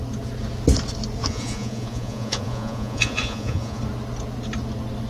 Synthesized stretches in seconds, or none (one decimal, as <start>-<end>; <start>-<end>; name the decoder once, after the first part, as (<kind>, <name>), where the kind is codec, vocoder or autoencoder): 1.2-3.8 (vocoder, Vocos)